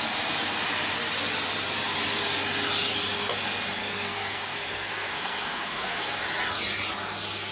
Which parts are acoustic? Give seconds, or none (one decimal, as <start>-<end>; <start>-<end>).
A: 0.0-3.8; 6.2-7.5